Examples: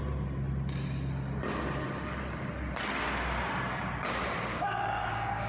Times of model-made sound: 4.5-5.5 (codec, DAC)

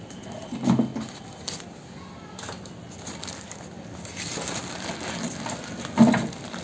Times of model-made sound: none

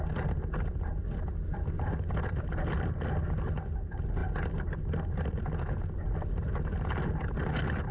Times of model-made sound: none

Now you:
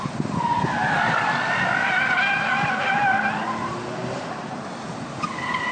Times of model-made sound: none